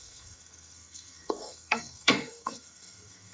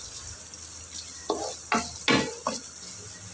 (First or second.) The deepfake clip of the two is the first